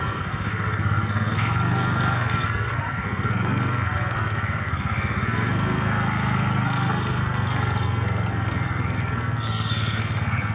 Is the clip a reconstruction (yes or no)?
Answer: yes